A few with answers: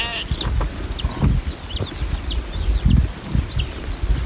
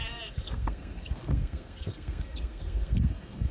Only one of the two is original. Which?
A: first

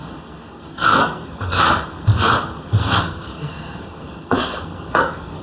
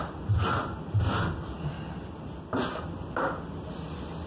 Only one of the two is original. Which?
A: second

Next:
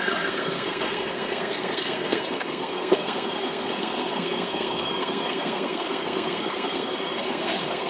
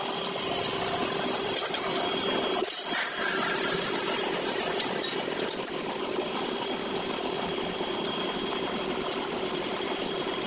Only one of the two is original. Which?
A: second